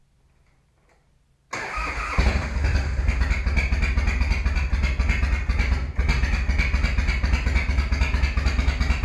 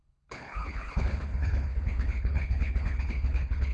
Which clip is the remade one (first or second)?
second